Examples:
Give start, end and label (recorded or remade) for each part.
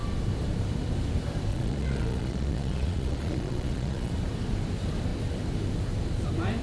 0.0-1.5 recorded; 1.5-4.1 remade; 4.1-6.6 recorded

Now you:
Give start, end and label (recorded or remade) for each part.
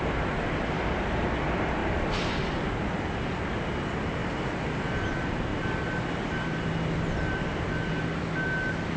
0.0-1.8 recorded; 1.8-2.3 remade; 2.3-4.2 recorded; 4.2-4.8 remade; 4.8-9.0 recorded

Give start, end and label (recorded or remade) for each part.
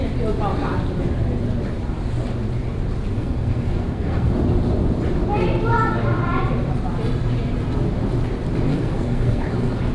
0.0-3.1 recorded; 3.1-4.3 remade; 4.3-8.7 recorded; 8.7-9.9 remade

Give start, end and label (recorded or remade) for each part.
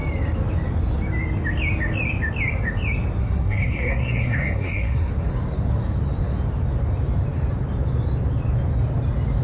0.0-3.2 recorded; 3.2-5.1 remade; 5.1-9.4 recorded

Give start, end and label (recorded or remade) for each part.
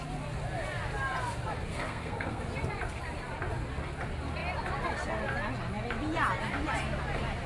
0.0-1.7 recorded; 1.7-2.4 remade; 2.4-7.5 recorded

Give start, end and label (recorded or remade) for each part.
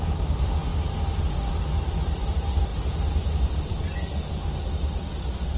0.0-2.7 recorded; 2.7-4.3 remade; 4.3-5.6 recorded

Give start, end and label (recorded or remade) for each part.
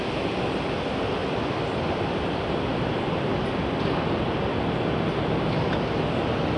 0.0-1.2 recorded; 1.2-5.2 remade; 5.2-6.6 recorded